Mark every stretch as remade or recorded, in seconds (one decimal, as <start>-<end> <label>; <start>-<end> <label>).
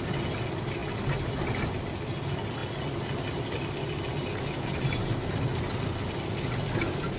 0.0-7.2 recorded